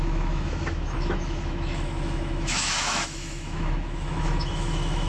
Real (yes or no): no